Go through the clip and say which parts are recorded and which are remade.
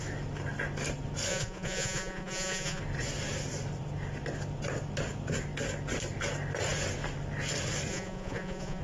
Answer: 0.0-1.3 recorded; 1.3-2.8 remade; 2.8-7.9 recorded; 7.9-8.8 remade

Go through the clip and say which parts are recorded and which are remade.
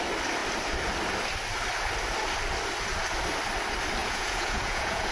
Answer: 0.0-4.0 recorded; 4.0-5.1 remade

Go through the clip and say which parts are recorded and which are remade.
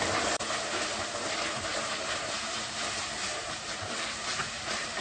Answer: 0.0-1.7 recorded; 1.7-5.0 remade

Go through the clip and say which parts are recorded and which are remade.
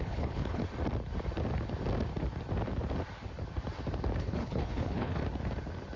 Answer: 0.0-0.6 remade; 0.6-4.2 recorded; 4.2-5.2 remade; 5.2-6.0 recorded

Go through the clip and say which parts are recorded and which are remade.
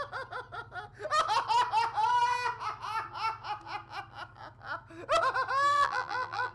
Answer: 0.0-5.7 recorded; 5.7-6.5 remade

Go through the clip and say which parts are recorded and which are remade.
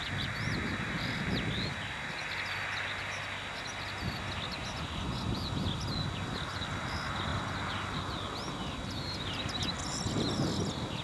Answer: 0.0-4.6 recorded; 4.6-5.3 remade; 5.3-11.0 recorded